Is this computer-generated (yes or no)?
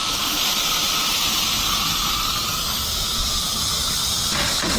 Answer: no